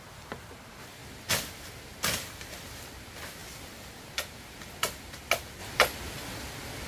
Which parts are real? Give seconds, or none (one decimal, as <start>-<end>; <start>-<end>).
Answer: 0.0-6.9